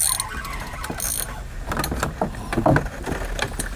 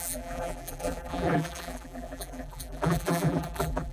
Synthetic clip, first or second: second